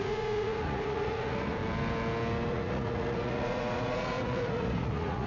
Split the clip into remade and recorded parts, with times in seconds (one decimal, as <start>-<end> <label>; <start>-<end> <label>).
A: 0.0-1.6 remade; 1.6-2.5 recorded; 2.5-5.3 remade